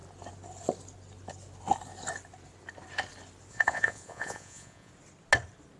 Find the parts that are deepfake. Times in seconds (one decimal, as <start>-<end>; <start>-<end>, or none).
3.5-4.9